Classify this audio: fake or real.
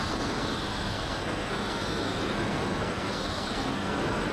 fake